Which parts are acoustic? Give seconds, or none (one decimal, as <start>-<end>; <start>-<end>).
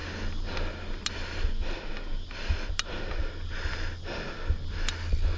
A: 0.0-5.4